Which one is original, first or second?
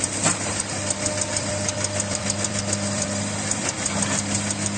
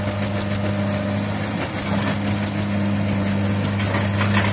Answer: second